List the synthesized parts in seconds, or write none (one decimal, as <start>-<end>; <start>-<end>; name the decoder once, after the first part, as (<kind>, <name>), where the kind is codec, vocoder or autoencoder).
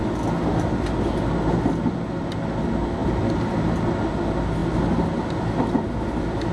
3.0-3.6 (vocoder, BigVGAN v2)